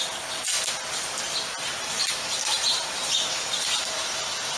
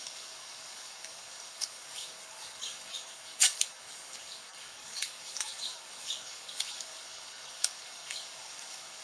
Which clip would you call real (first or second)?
first